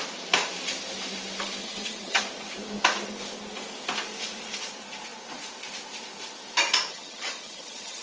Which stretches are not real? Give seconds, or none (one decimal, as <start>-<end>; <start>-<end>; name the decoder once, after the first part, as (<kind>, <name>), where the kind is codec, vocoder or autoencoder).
1.6-2.2 (vocoder, HiFi-GAN); 6.9-8.0